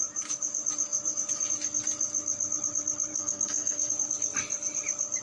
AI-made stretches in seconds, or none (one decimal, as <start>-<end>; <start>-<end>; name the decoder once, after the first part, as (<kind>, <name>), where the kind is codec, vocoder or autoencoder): 3.1-3.9 (codec, SNAC)